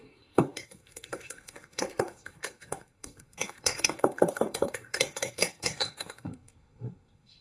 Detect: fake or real fake